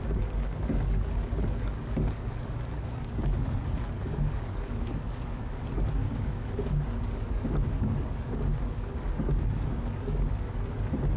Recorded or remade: remade